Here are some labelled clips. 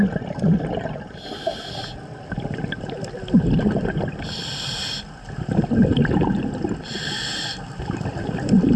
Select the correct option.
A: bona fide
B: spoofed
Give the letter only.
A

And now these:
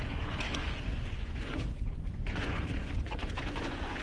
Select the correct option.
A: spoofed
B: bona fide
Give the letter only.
A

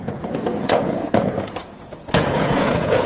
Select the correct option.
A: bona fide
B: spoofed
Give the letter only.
B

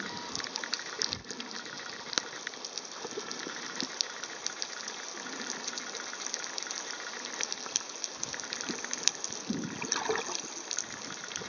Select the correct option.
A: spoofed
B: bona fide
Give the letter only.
B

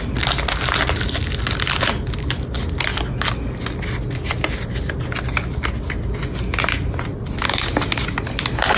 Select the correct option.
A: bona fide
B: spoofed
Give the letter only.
A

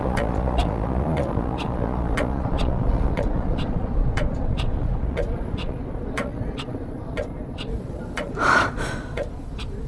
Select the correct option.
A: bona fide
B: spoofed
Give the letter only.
B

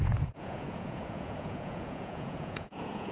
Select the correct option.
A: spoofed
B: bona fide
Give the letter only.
A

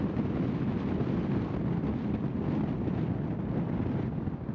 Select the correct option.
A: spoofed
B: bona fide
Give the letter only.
B